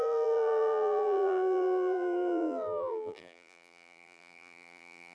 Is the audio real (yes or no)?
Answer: no